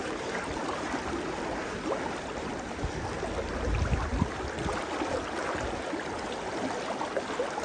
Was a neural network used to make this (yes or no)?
no